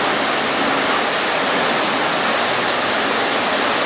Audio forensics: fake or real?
real